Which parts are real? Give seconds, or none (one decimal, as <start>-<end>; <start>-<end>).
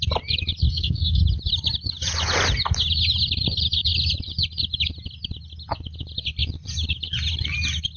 0.0-0.7; 1.2-8.0